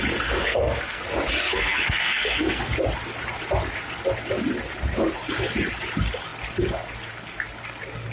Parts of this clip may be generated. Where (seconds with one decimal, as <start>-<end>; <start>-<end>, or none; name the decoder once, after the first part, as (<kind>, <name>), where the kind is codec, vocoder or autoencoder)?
0.4-1.0 (codec, SNAC); 1.4-2.6